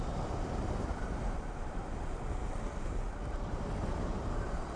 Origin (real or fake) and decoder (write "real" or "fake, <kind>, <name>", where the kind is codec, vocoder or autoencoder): real